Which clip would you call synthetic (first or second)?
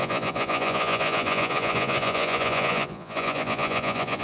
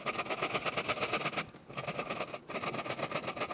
first